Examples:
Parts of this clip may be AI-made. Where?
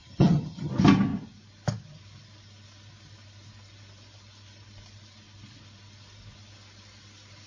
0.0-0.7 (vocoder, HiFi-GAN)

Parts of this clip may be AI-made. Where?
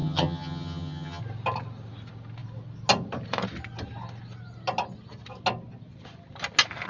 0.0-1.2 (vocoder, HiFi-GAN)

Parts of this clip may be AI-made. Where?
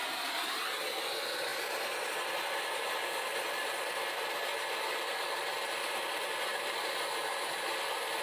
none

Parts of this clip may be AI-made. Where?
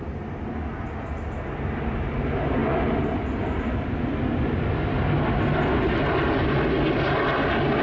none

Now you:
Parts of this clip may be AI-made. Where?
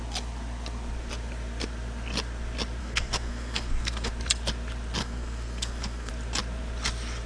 2.8-4.1 (codec, SNAC); 5.0-6.1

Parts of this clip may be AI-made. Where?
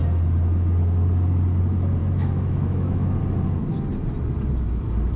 2.0-3.2 (autoencoder, DAC-VAE)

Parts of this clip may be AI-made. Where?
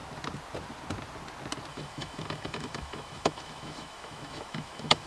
1.7-5.1 (autoencoder, DAC-VAE)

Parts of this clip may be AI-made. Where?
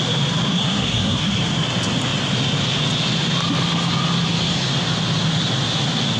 0.5-1.3 (codec, SNAC)